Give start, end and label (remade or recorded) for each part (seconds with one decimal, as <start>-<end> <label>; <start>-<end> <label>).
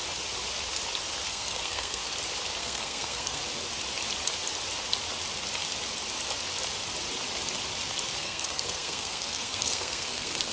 0.0-1.3 recorded; 1.3-2.0 remade; 2.0-2.6 recorded; 2.6-3.4 remade; 3.4-8.2 recorded; 8.2-10.5 remade